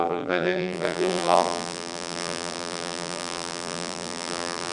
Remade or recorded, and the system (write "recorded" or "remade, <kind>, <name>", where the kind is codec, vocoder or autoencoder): remade, vocoder, BigVGAN v2